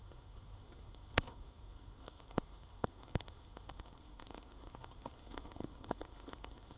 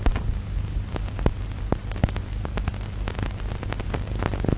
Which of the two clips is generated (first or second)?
first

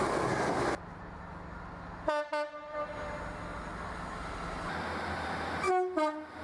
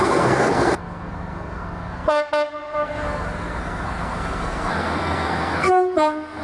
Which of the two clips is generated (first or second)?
second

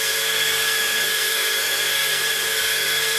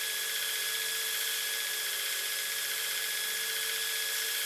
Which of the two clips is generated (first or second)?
first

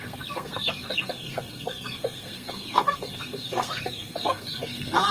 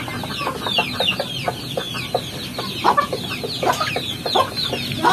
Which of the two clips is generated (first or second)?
first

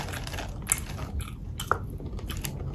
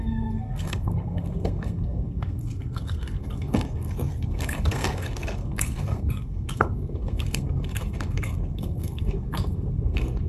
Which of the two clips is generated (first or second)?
second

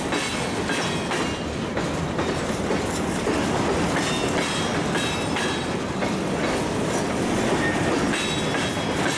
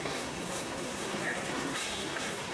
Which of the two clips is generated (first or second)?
second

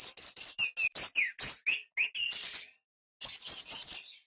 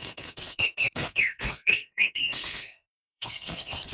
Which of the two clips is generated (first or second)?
second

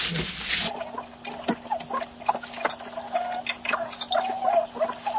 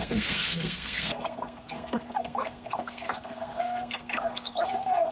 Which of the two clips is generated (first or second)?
second